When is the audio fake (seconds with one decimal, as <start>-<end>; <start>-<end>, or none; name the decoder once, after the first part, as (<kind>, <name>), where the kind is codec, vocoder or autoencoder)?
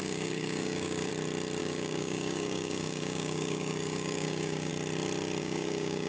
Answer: 0.0-1.1 (codec, DAC); 1.6-4.7; 5.4-6.1